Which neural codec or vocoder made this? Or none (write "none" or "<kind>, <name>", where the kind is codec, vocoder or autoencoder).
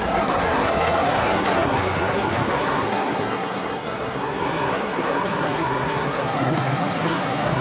codec, SNAC